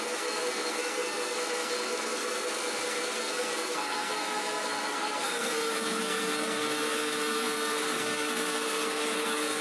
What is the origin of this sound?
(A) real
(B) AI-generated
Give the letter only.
B